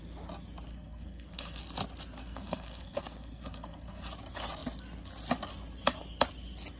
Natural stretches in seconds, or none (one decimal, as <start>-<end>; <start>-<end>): 0.0-0.7; 1.6-2.2; 4.1-6.8